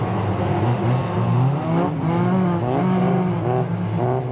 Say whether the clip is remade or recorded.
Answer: recorded